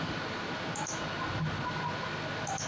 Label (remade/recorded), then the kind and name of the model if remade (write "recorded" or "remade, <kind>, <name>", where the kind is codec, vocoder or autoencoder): recorded